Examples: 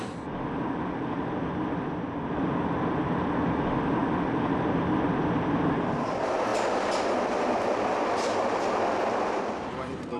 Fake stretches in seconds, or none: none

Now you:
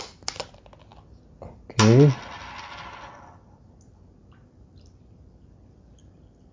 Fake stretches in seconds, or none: none